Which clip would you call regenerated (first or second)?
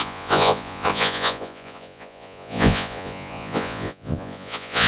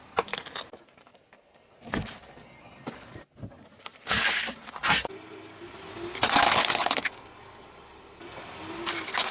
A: first